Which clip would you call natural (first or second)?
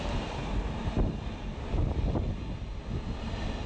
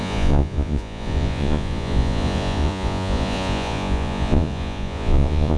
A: first